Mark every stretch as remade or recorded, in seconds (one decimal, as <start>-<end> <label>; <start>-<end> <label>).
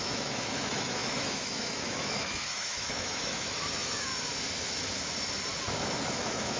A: 0.0-4.1 remade; 4.1-6.1 recorded; 6.1-6.6 remade